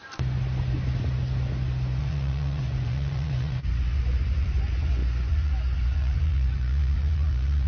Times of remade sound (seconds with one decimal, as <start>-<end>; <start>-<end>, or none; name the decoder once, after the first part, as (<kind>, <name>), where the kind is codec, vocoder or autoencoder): 2.0-7.7 (vocoder, Vocos)

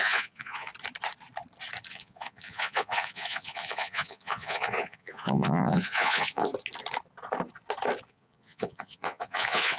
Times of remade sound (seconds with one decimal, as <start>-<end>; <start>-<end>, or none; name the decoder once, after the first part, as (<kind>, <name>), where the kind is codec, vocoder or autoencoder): 0.0-0.7 (vocoder, Vocos); 1.9-6.5; 8.1-9.8